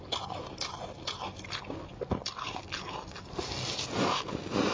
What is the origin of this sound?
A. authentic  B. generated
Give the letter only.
A